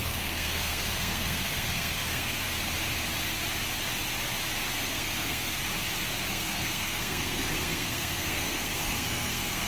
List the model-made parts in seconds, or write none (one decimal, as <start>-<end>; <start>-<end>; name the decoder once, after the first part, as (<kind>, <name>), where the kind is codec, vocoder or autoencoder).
0.0-2.5 (codec, SNAC); 4.9-5.6; 6.3-9.7